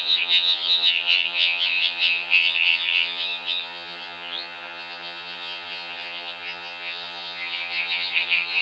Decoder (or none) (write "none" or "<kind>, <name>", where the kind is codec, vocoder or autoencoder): vocoder, HiFi-GAN